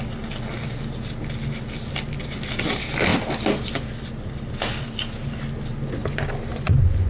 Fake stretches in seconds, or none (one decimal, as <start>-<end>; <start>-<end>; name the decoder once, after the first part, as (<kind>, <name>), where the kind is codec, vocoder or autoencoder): 6.5-7.1 (vocoder, Vocos)